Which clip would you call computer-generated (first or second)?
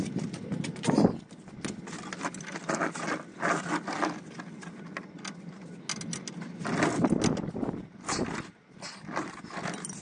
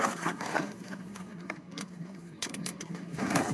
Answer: second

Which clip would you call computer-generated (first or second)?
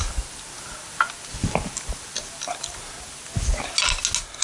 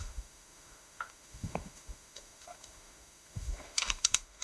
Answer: second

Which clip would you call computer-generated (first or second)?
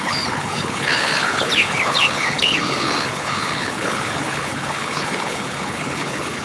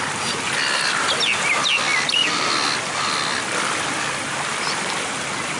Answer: first